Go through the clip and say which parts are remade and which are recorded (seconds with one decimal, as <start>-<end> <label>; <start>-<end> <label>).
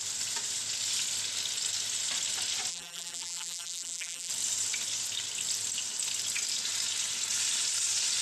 0.0-2.7 recorded; 2.7-4.3 remade; 4.3-8.2 recorded